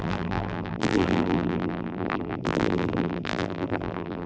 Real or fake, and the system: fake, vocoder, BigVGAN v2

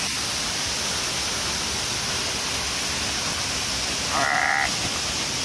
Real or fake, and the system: real